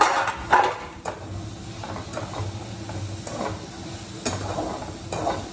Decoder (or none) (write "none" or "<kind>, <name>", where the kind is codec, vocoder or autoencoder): none